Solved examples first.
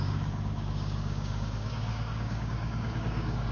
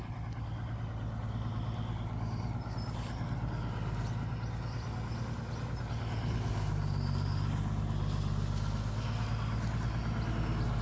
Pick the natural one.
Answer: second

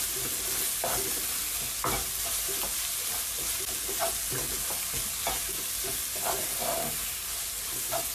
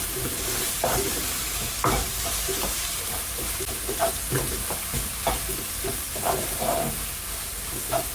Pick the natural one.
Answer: first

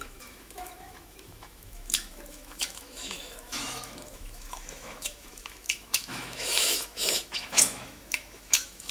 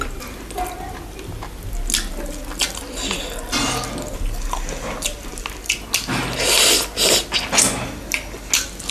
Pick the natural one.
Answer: second